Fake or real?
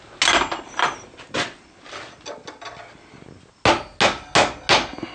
real